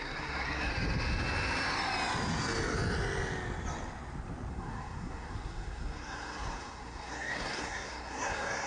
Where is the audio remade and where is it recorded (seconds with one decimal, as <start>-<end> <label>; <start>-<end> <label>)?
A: 0.0-0.7 remade; 0.7-4.5 recorded; 4.5-8.7 remade